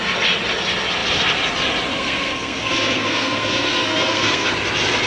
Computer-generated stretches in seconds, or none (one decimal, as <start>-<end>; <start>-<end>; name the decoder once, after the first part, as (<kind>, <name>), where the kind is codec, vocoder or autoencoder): 1.9-4.5 (codec, SNAC)